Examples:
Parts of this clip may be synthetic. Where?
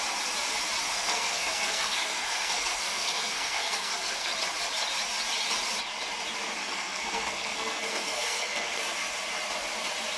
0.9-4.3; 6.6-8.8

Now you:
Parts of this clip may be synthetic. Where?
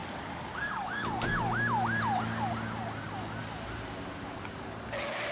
0.0-1.4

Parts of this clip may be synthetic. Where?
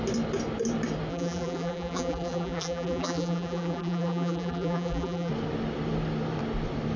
1.1-5.3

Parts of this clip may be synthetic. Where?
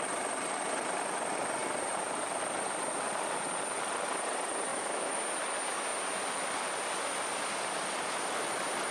4.7-5.2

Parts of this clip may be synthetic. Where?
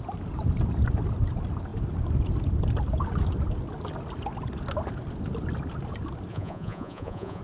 6.3-7.4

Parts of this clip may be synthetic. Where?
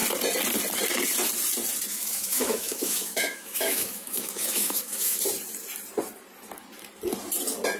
1.9-5.2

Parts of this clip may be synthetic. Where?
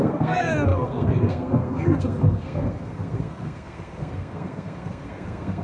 0.0-5.6